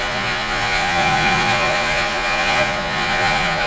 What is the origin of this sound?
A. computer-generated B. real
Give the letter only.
A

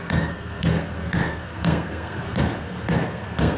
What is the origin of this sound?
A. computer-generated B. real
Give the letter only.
A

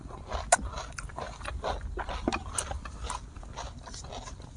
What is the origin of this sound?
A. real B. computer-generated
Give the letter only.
A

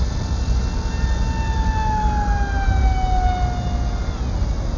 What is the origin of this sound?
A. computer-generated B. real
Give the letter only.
B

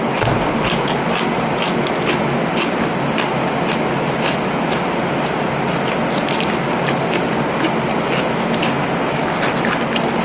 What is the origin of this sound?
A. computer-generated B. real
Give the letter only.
B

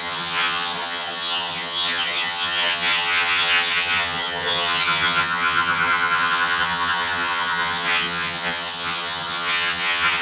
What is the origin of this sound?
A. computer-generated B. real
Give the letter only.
A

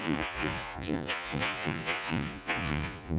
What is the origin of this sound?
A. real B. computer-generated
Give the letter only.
B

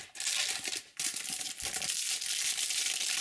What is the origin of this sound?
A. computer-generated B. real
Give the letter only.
B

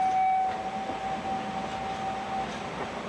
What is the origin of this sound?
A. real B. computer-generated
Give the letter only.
A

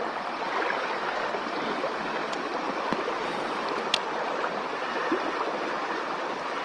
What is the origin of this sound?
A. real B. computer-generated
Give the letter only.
A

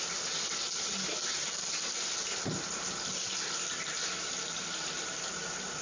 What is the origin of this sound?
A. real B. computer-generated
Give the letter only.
A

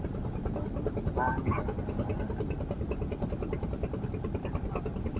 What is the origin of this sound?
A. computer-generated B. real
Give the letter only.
B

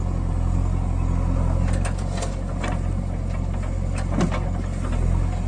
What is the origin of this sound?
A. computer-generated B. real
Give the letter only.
B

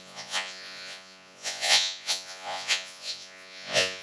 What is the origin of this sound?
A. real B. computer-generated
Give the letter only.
B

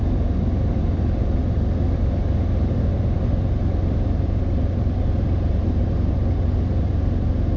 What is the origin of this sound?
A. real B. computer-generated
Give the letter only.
A